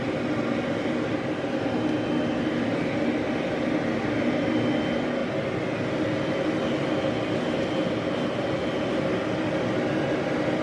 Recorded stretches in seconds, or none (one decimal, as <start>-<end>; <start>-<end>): 0.0-10.6